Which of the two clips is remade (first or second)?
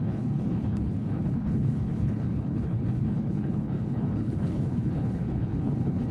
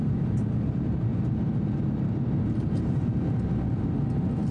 first